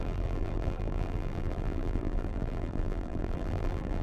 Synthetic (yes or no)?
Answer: yes